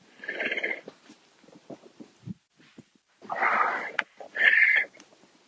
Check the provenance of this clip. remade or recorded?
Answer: remade